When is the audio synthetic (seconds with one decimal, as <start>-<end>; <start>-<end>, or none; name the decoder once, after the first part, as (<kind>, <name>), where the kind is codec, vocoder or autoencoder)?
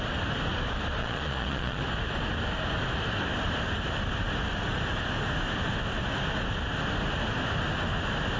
1.0-1.8 (vocoder, Vocos)